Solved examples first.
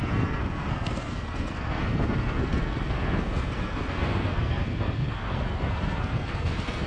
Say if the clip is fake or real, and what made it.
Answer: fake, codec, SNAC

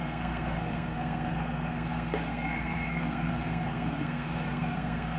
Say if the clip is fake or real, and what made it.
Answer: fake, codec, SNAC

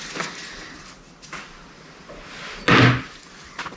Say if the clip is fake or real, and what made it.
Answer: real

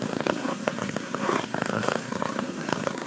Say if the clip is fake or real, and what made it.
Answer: fake, codec, SNAC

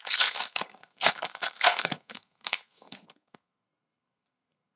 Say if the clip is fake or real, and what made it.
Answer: fake, codec, SNAC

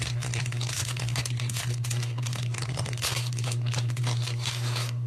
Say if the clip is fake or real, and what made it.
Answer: fake, codec, SNAC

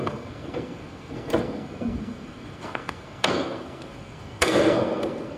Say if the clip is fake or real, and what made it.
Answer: fake, codec, SNAC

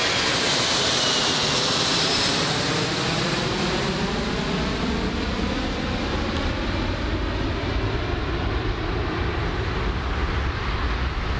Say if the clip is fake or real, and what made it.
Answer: real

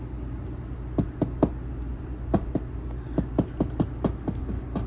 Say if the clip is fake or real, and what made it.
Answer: real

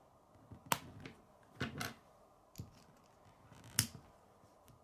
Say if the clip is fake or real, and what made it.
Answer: real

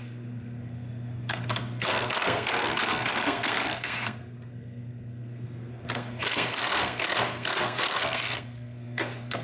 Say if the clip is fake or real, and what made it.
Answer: fake, codec, SNAC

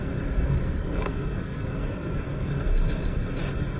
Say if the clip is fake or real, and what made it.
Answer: fake, codec, SNAC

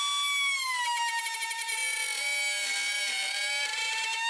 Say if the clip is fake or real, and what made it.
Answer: real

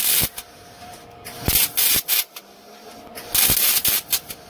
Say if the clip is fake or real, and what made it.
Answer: real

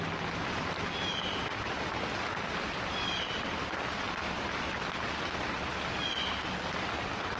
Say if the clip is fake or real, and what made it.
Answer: real